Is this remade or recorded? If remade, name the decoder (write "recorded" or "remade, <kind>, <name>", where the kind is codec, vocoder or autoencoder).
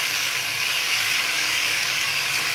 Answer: remade, codec, DAC